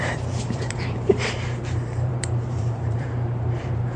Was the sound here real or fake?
fake